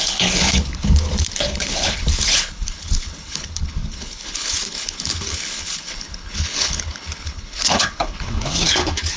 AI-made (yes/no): yes